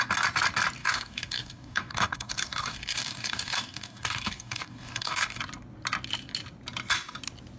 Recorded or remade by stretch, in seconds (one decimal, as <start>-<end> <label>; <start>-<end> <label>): 0.0-0.8 recorded; 0.8-5.4 remade; 5.4-7.6 recorded